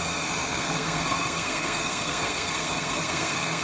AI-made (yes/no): yes